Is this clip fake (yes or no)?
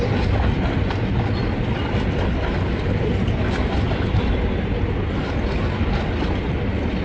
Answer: no